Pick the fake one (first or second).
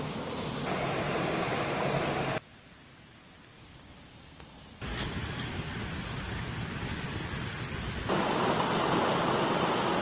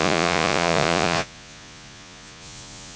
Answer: second